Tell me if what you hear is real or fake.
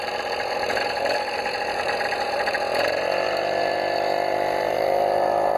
fake